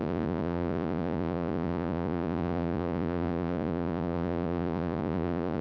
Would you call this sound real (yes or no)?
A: no